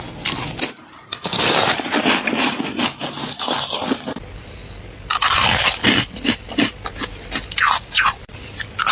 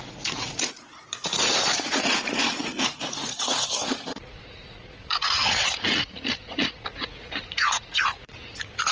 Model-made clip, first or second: second